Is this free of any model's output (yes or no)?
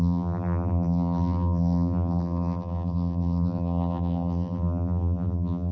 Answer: no